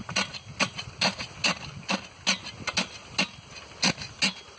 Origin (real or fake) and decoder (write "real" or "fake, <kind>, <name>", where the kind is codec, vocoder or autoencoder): real